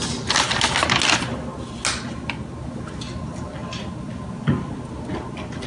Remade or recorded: recorded